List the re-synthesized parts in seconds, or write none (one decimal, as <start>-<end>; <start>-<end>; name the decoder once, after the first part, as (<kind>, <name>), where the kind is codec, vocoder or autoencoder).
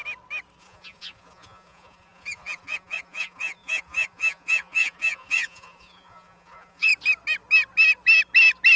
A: 0.6-6.9 (vocoder, Vocos)